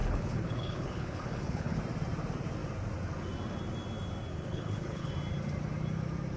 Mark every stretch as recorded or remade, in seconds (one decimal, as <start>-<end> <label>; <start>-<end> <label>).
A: 0.0-1.8 remade; 1.8-4.3 recorded; 4.3-5.1 remade; 5.1-6.4 recorded